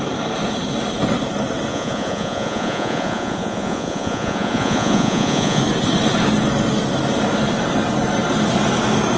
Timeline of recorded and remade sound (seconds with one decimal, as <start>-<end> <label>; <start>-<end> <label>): 0.0-1.7 recorded; 1.7-5.6 remade; 5.6-9.2 recorded